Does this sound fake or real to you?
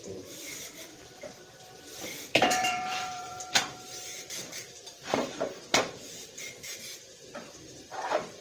fake